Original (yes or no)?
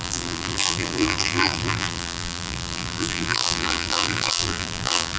no